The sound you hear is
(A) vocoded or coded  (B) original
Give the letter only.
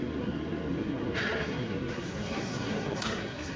A